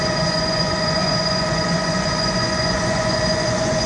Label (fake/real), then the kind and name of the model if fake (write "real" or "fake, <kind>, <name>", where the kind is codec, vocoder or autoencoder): fake, vocoder, Vocos